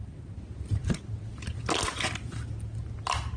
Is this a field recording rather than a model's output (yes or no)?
yes